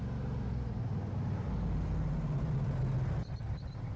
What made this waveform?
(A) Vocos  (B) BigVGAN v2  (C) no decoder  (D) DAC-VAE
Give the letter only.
C